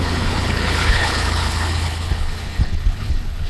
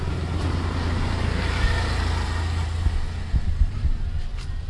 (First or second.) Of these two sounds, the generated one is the first